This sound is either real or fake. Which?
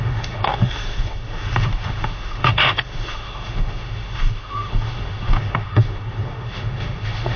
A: fake